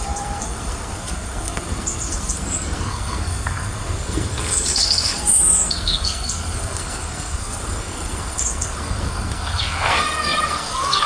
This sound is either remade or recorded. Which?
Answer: remade